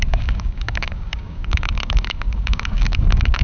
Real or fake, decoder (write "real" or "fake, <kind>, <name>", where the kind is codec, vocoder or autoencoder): fake, codec, DAC